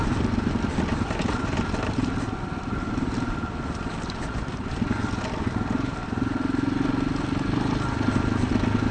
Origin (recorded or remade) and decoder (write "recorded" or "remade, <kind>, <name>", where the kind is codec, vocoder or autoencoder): recorded